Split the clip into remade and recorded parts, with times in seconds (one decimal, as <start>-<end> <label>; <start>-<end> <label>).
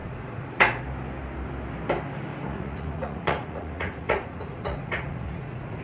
0.0-0.8 remade; 0.8-2.3 recorded; 2.3-5.8 remade